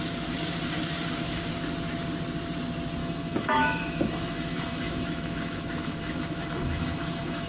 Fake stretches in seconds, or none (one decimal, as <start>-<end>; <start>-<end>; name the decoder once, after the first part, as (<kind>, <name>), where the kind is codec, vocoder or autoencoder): 3.0-7.5 (autoencoder, DAC-VAE)